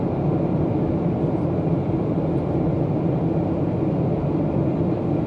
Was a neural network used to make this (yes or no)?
no